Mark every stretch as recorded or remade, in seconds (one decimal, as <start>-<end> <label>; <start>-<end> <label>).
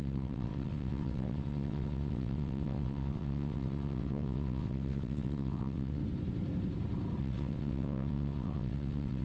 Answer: 0.0-6.0 remade; 6.0-7.2 recorded; 7.2-9.2 remade